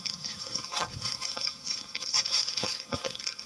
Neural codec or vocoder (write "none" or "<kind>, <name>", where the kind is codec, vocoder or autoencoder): codec, SNAC